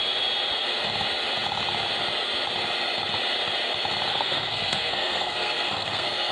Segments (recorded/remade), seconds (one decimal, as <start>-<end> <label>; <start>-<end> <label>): 0.0-4.1 recorded; 4.1-6.3 remade